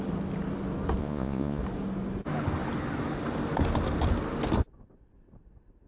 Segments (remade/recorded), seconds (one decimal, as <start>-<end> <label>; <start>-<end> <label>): 0.0-1.0 recorded; 1.0-1.6 remade; 1.6-5.9 recorded